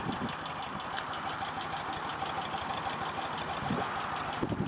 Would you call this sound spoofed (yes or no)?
no